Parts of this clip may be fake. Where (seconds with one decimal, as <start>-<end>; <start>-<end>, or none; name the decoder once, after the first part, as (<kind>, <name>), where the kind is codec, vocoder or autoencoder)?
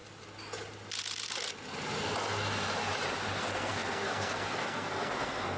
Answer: 3.4-5.6 (codec, SNAC)